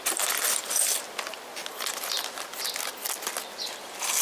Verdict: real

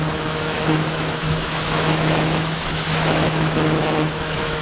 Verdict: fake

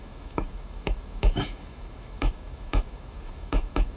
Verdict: fake